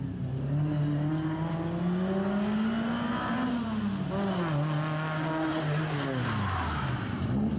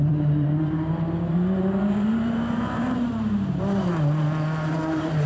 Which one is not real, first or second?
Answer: second